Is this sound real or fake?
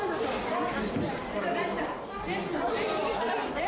real